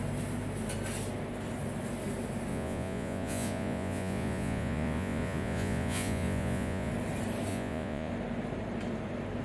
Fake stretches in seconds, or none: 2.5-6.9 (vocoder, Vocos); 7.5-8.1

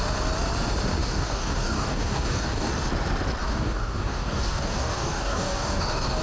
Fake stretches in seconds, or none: 1.0-2.7 (codec, DAC); 3.4-6.2

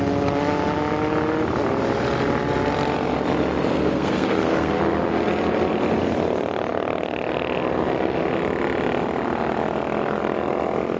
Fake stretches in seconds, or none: 3.7-4.8 (codec, SNAC)

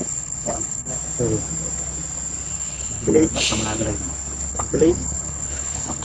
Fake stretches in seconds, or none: 0.0-0.9 (codec, HILCodec); 2.5-3.3; 4.5-6.0

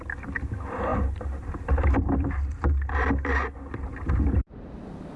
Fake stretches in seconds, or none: 0.9-2.7 (vocoder, BigVGAN v2); 3.9-4.5

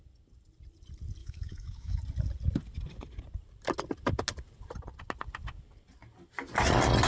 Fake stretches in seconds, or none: 1.2-2.0 (autoencoder, DAC-VAE)

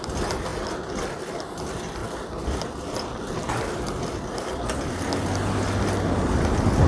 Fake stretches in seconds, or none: none

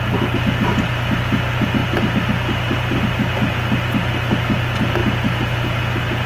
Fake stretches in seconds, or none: none